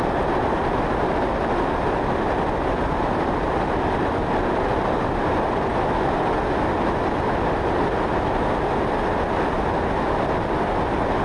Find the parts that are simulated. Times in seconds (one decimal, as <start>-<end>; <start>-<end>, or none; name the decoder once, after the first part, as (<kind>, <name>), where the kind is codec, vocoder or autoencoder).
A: 4.7-5.3 (vocoder, BigVGAN v2)